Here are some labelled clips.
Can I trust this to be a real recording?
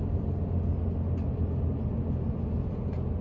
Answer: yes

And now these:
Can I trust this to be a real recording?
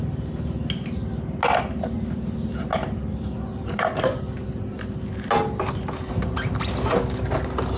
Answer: yes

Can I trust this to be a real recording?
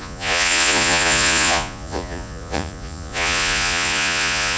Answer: no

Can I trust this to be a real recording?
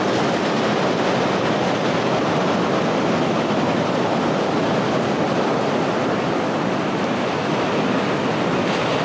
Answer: yes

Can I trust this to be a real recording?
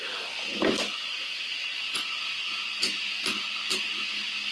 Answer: yes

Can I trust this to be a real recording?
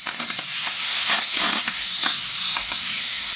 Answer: no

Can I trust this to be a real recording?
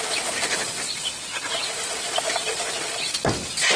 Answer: yes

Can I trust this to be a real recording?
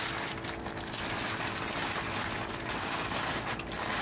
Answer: yes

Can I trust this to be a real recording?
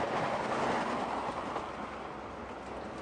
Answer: yes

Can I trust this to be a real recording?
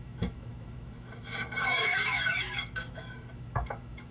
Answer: no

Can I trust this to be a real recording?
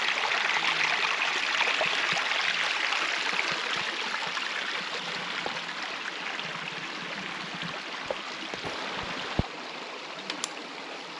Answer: yes